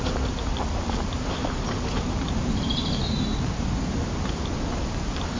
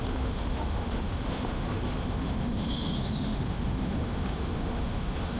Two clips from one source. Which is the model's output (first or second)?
second